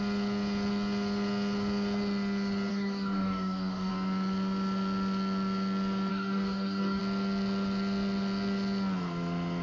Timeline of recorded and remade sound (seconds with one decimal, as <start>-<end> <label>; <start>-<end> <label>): 0.0-2.7 recorded; 2.7-3.9 remade; 3.9-6.1 recorded; 6.1-7.0 remade; 7.0-9.6 recorded